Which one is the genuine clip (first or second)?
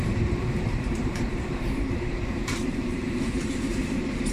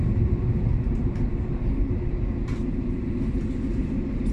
second